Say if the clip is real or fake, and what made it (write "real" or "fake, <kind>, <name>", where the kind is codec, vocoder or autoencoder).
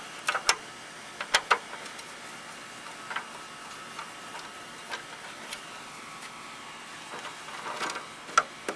real